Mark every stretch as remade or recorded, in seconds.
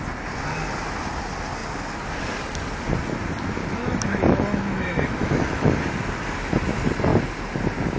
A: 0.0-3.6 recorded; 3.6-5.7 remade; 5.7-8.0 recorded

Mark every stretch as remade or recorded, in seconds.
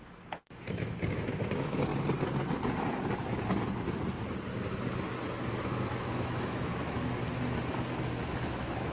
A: 0.0-1.9 remade; 1.9-5.5 recorded; 5.5-7.2 remade; 7.2-7.9 recorded; 7.9-8.9 remade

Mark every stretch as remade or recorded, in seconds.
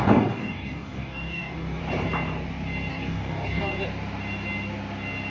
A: 0.0-1.8 remade; 1.8-2.9 recorded; 2.9-3.7 remade; 3.7-5.3 recorded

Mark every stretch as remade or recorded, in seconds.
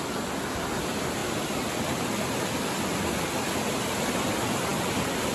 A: 0.0-5.3 recorded